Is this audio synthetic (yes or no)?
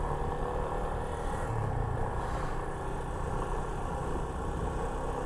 no